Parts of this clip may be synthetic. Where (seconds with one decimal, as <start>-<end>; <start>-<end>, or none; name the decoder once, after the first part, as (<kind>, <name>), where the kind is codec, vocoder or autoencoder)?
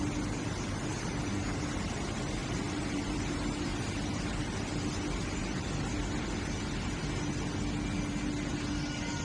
2.4-3.3 (vocoder, BigVGAN v2)